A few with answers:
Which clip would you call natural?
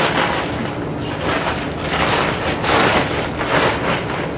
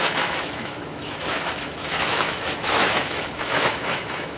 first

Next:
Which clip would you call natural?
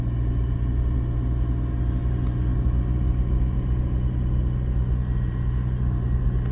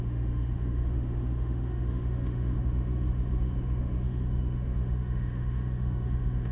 first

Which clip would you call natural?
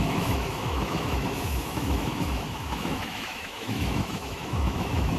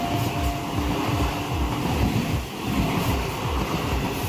second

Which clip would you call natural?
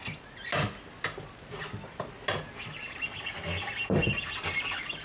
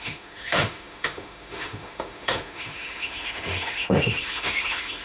first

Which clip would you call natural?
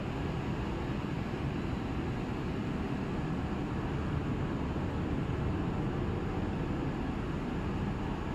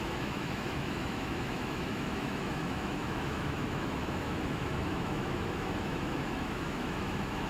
first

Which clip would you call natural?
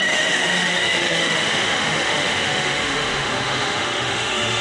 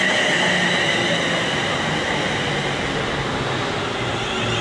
second